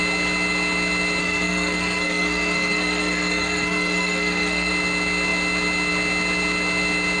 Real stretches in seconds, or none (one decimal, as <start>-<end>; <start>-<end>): 0.0-1.2; 4.7-7.2